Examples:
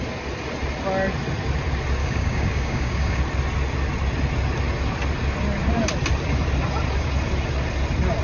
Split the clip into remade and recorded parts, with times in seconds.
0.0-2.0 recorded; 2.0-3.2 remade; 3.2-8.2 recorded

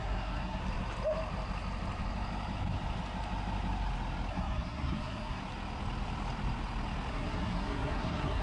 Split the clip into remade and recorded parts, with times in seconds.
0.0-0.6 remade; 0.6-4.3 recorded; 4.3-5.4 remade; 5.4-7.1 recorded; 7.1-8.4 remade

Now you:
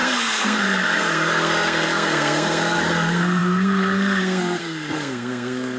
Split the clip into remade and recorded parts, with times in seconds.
0.0-5.8 remade

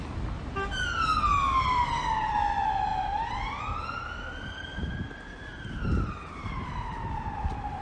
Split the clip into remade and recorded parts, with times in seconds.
0.0-2.9 recorded; 2.9-3.6 remade; 3.6-5.5 recorded; 5.5-6.6 remade; 6.6-7.8 recorded